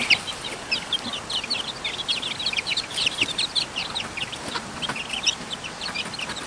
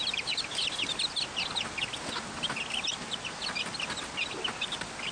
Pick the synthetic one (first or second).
first